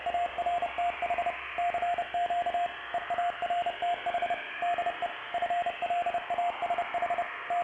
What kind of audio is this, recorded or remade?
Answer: recorded